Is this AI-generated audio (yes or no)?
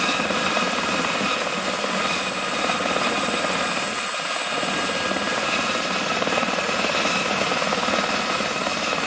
no